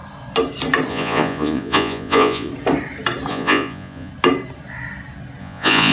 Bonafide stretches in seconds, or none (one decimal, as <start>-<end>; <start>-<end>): 0.0-0.9; 2.5-3.3; 4.1-5.4